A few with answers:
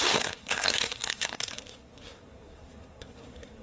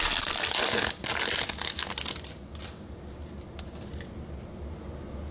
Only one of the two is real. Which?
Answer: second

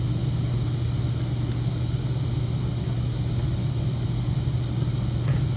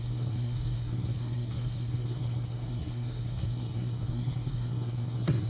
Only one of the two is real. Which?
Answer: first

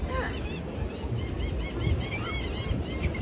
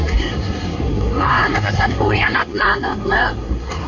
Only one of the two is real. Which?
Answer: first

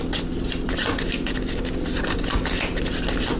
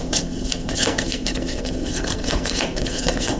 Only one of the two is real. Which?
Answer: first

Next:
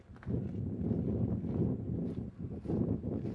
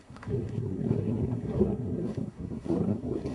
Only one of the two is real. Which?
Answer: first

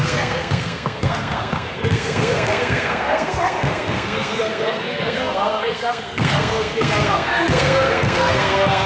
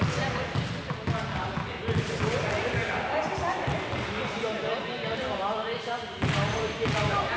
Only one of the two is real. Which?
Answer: second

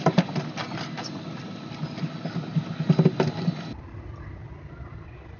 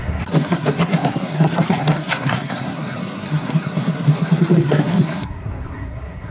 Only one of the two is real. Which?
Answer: first